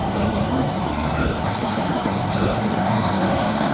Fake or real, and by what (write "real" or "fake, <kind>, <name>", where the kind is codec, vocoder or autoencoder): fake, codec, SNAC